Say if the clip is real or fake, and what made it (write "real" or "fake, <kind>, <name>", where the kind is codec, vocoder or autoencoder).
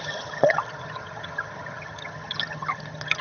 fake, vocoder, HiFi-GAN